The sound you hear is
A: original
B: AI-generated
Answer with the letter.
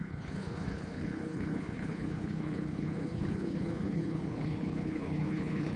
B